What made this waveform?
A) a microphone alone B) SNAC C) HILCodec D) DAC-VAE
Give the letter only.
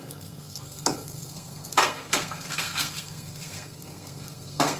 B